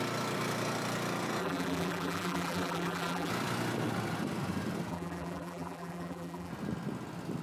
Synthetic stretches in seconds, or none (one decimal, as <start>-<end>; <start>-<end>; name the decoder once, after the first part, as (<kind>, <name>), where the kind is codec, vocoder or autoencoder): 1.4-3.3 (vocoder, BigVGAN v2); 4.9-6.5